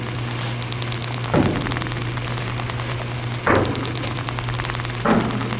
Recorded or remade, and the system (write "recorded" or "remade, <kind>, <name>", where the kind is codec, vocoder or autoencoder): recorded